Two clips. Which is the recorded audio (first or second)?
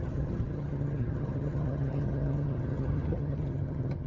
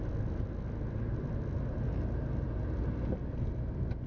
second